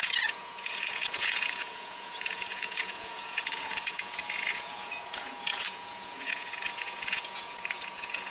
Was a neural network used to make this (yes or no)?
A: yes